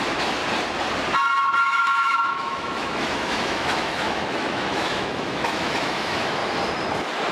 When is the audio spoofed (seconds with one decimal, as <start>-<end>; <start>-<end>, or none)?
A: 0.0-0.4; 1.6-6.4